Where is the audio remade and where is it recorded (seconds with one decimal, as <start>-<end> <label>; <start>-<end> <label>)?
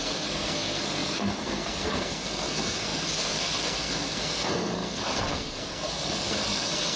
0.0-7.0 remade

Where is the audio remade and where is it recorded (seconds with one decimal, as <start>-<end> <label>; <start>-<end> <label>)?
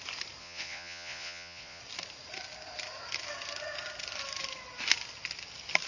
0.0-0.4 recorded; 0.4-1.8 remade; 1.8-5.9 recorded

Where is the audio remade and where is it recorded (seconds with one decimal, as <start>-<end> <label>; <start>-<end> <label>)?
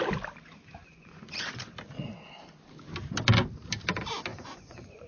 0.0-0.8 recorded; 0.8-1.7 remade; 1.7-4.3 recorded; 4.3-5.1 remade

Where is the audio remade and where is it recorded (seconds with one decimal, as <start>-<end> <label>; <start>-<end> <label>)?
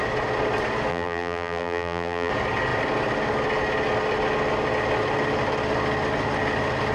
0.0-0.9 recorded; 0.9-2.3 remade; 2.3-6.9 recorded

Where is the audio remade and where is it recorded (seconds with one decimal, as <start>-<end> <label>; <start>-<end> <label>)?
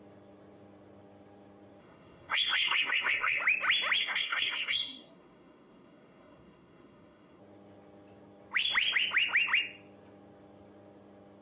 0.0-1.8 recorded; 1.8-3.4 remade; 3.4-4.0 recorded; 4.0-7.4 remade; 7.4-11.4 recorded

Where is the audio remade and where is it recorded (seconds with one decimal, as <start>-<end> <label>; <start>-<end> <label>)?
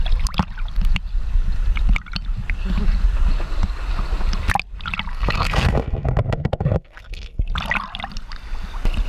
0.0-5.1 recorded; 5.1-7.4 remade; 7.4-9.1 recorded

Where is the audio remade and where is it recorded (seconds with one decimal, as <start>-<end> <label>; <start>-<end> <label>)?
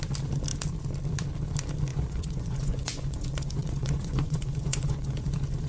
0.0-1.9 recorded; 1.9-5.3 remade; 5.3-5.7 recorded